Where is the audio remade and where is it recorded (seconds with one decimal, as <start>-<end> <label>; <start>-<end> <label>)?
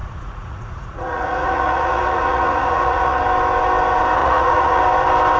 0.0-3.2 remade; 3.2-4.2 recorded; 4.2-4.8 remade; 4.8-5.4 recorded